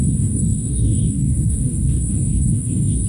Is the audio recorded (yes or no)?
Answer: no